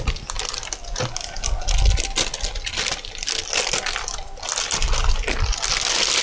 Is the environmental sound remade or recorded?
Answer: recorded